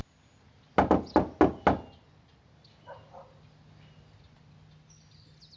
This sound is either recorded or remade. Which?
recorded